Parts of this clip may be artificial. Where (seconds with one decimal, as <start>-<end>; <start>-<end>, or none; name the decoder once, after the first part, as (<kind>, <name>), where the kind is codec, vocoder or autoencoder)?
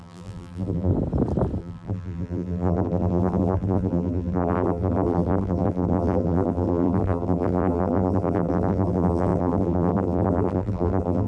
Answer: 0.0-0.9 (vocoder, BigVGAN v2); 1.6-11.3